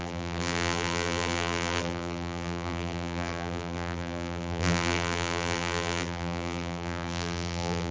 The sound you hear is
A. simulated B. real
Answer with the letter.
A